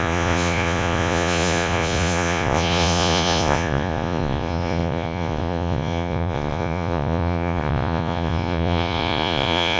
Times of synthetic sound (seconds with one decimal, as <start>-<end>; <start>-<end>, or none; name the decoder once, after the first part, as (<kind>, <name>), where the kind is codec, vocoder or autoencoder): 0.0-9.8 (vocoder, Vocos)